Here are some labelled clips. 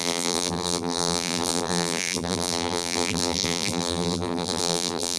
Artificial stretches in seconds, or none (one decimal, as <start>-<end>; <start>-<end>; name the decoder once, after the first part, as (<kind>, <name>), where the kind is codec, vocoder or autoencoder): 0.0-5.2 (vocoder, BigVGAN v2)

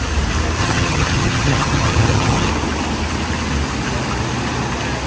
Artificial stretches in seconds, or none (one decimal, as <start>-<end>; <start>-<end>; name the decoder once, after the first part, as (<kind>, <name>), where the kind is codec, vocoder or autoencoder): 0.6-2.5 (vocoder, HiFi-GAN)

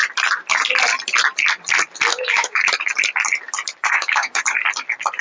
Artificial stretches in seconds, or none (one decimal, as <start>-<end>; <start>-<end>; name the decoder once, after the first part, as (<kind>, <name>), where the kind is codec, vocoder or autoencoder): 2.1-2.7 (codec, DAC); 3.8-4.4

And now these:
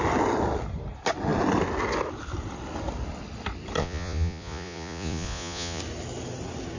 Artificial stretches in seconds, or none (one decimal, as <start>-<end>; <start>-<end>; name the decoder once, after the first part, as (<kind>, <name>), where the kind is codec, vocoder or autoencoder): 3.8-5.8 (vocoder, Vocos)

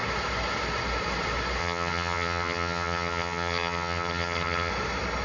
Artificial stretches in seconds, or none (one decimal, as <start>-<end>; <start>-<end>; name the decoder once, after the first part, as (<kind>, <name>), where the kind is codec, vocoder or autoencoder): 1.6-4.7 (vocoder, HiFi-GAN)

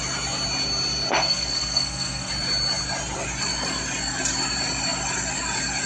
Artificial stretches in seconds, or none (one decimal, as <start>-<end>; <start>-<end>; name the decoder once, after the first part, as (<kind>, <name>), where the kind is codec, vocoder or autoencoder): 1.1-2.3 (codec, SNAC)